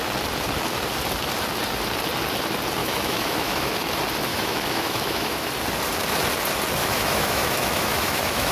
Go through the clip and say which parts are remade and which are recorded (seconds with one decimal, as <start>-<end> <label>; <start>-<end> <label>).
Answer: 0.0-2.8 recorded; 2.8-3.7 remade; 3.7-4.3 recorded; 4.3-5.5 remade; 5.5-6.8 recorded; 6.8-8.5 remade